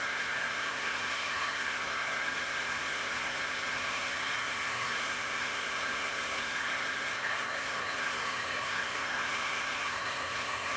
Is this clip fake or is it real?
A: fake